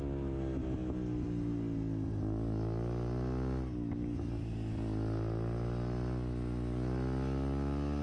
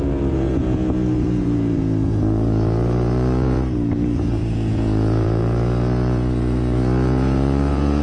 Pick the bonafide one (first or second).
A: first